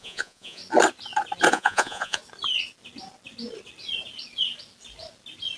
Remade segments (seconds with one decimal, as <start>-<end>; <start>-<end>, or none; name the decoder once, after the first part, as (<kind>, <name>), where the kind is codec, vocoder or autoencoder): 0.0-0.6 (vocoder, Vocos); 1.5-2.2